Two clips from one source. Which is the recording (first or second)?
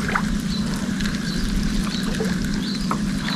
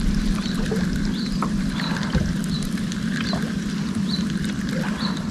first